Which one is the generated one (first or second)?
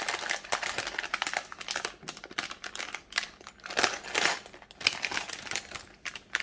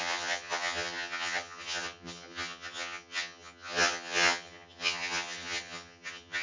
second